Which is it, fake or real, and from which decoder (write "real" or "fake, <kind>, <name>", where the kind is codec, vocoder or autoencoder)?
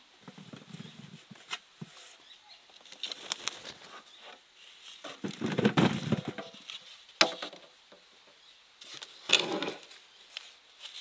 real